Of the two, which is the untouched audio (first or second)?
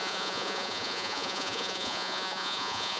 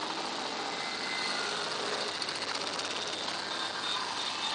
second